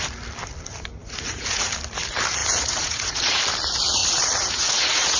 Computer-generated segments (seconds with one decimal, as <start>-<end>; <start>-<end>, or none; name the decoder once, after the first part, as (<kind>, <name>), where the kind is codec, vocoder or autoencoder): 1.0-1.7 (vocoder, Vocos); 2.4-3.4; 4.0-5.2